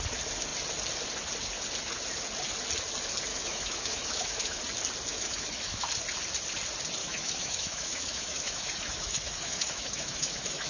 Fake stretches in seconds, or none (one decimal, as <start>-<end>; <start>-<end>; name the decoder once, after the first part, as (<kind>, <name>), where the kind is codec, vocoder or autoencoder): 3.3-4.6 (autoencoder, DAC-VAE); 5.1-5.9; 7.0-10.7

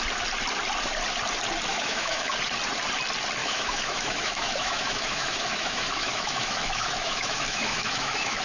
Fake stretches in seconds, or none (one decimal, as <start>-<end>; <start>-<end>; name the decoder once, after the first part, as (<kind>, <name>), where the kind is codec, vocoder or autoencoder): 1.7-2.3 (autoencoder, DAC-VAE); 3.4-8.4

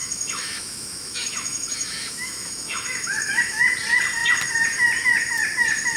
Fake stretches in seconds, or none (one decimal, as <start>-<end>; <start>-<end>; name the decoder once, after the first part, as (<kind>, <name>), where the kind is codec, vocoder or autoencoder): 0.0-3.6 (autoencoder, DAC-VAE)

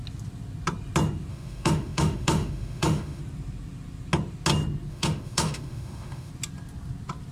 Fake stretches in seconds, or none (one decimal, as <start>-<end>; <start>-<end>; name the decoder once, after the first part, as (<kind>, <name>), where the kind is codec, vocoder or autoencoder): 1.3-3.2 (autoencoder, DAC-VAE); 4.9-6.3